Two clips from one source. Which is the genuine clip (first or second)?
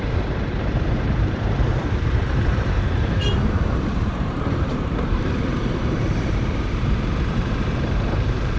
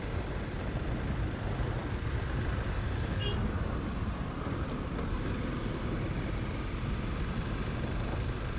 second